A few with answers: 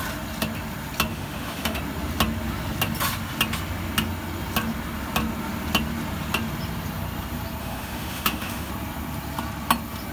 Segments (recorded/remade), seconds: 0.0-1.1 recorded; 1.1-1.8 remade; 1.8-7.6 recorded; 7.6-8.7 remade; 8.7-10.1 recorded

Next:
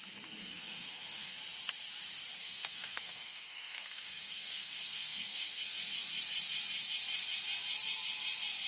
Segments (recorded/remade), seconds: 0.0-0.4 recorded; 0.4-1.4 remade; 1.4-2.4 recorded; 2.4-5.8 remade; 5.8-8.7 recorded